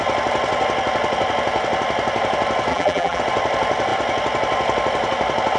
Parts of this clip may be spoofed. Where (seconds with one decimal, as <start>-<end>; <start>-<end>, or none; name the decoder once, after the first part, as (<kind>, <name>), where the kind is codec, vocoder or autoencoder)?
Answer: 2.7-3.2 (vocoder, BigVGAN v2)